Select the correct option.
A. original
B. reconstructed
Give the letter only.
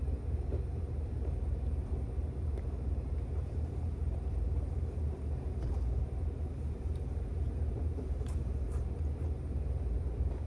B